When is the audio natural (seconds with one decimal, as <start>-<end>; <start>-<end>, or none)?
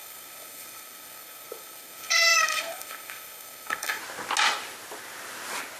4.0-5.8